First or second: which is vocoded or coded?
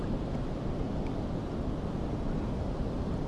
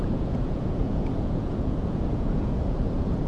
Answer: second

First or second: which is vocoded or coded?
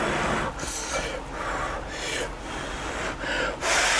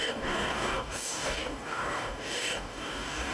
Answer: second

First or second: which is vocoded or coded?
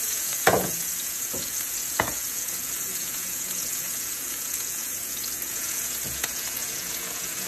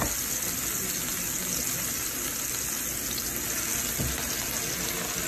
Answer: first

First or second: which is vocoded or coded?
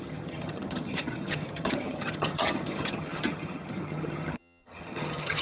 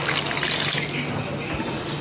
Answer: first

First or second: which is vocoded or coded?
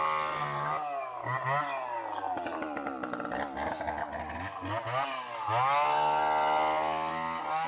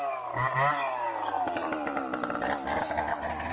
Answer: second